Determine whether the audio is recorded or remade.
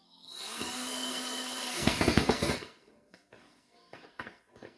remade